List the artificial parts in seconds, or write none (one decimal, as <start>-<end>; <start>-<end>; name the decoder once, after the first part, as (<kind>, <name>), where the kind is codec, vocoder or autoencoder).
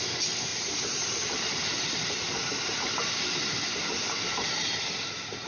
0.5-2.1 (vocoder, BigVGAN v2); 2.5-3.2